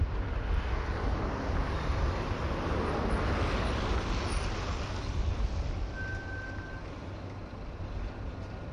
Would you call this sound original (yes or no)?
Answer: yes